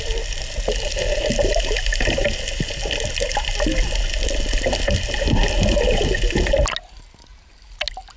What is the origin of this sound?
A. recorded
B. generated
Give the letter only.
A